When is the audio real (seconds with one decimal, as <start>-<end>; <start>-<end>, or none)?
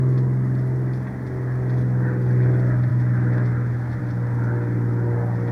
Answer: 0.0-2.9; 4.0-5.5